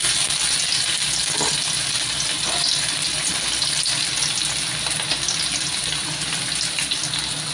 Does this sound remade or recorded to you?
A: recorded